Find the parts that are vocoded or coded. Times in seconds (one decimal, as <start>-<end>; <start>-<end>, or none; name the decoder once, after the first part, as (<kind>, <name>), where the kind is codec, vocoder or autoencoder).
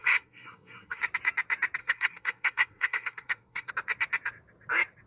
0.0-1.0 (codec, SNAC); 1.8-3.7